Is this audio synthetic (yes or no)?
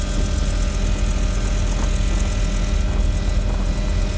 no